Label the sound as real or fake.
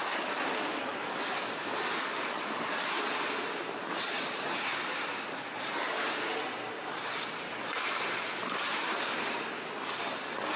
real